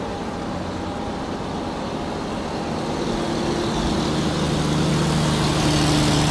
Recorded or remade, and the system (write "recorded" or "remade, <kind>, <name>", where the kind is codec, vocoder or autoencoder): recorded